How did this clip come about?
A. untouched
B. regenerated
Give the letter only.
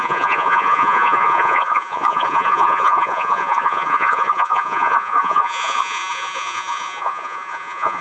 B